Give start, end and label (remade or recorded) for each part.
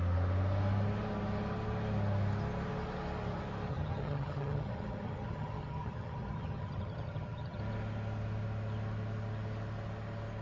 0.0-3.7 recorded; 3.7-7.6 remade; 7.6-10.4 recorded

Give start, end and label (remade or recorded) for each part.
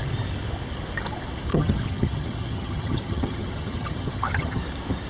0.0-1.5 recorded; 1.5-4.6 remade; 4.6-5.1 recorded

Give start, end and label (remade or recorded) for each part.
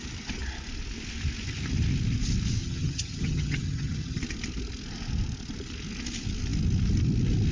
0.0-2.6 recorded; 2.6-4.2 remade; 4.2-7.5 recorded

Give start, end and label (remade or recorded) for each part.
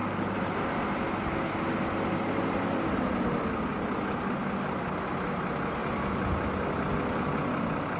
0.0-8.0 recorded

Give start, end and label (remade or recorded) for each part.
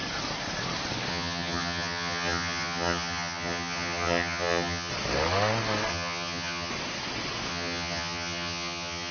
0.0-1.1 recorded; 1.1-4.9 remade; 4.9-5.9 recorded; 5.9-6.7 remade; 6.7-7.5 recorded; 7.5-9.1 remade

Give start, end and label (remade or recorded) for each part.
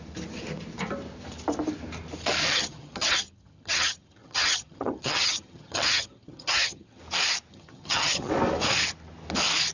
0.0-2.4 recorded; 2.4-7.0 remade; 7.0-7.5 recorded; 7.5-8.3 remade; 8.3-9.7 recorded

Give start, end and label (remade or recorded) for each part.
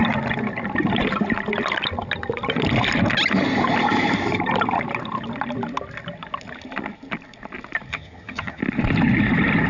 0.0-7.9 recorded; 7.9-8.6 remade; 8.6-9.7 recorded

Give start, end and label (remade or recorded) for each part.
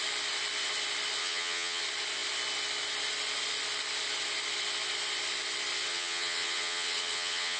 0.0-1.2 recorded; 1.2-1.8 remade; 1.8-5.9 recorded; 5.9-7.6 remade